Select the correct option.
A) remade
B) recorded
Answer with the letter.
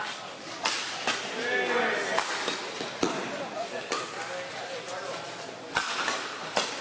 B